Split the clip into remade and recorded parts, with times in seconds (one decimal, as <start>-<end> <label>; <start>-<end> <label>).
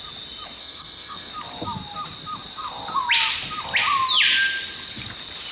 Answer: 0.0-0.6 recorded; 0.6-1.3 remade; 1.3-5.5 recorded